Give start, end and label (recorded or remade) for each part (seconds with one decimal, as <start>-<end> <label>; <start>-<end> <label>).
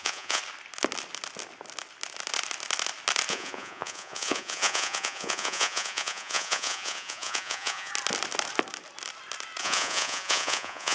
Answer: 0.0-0.4 remade; 0.4-3.3 recorded; 3.3-7.9 remade; 7.9-9.6 recorded; 9.6-10.9 remade